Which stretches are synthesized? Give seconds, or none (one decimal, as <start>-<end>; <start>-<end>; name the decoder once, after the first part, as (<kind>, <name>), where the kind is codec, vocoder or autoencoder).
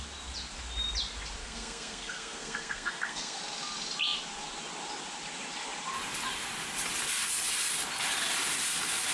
1.4-3.4 (codec, SNAC)